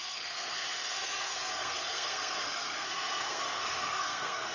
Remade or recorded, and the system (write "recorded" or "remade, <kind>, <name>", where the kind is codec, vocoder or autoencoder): remade, codec, SNAC